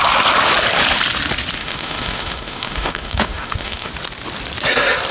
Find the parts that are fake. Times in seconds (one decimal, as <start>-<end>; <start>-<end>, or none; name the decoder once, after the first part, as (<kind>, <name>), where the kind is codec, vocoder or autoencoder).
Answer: 1.6-3.9 (autoencoder, DAC-VAE)